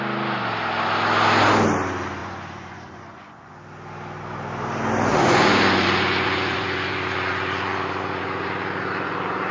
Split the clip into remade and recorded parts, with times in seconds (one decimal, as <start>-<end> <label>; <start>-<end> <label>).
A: 0.0-2.2 recorded; 2.2-3.5 remade; 3.5-5.1 recorded; 5.1-9.5 remade